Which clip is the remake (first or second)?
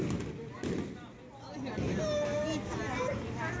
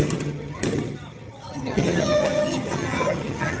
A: second